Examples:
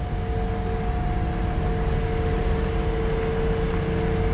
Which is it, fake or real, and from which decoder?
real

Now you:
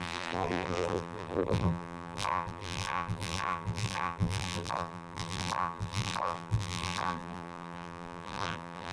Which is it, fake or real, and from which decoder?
fake, vocoder, BigVGAN v2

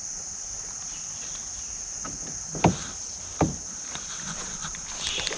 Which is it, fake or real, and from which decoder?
real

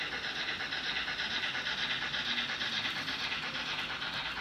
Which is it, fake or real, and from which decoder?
real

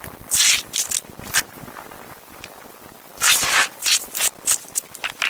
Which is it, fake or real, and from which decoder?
fake, vocoder, BigVGAN v2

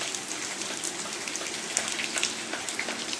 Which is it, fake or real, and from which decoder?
real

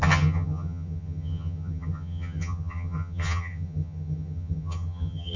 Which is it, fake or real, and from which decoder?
fake, vocoder, HiFi-GAN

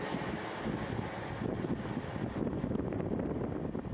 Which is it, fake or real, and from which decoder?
real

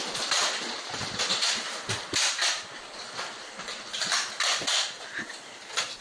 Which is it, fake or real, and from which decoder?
real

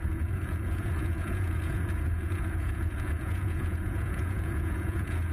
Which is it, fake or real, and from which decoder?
fake, vocoder, Vocos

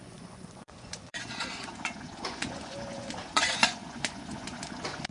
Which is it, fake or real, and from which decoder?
fake, vocoder, Vocos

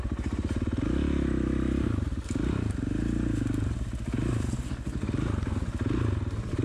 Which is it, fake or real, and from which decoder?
real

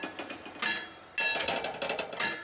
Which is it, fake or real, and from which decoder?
real